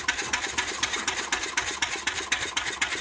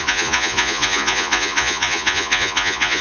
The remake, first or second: second